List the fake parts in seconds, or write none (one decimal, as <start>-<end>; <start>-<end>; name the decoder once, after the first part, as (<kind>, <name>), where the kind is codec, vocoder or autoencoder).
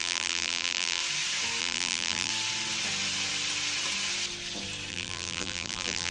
0.0-1.0 (vocoder, BigVGAN v2); 1.6-2.3; 4.9-6.1